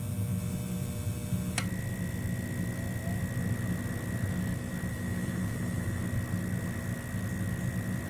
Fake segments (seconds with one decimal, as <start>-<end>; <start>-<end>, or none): 4.9-6.0